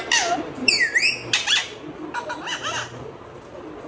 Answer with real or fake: real